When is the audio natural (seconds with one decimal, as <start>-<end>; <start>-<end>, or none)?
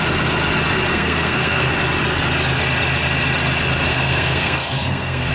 0.0-0.9; 1.7-3.9